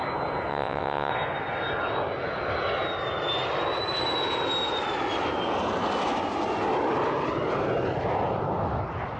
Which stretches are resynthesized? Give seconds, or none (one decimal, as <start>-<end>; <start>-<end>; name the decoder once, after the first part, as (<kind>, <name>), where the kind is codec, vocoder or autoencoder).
0.5-1.1 (vocoder, WaveNeXt)